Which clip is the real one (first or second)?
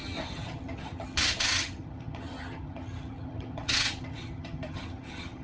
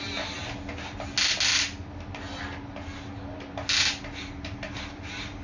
second